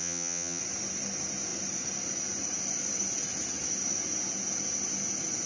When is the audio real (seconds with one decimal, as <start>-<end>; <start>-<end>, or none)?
0.6-5.5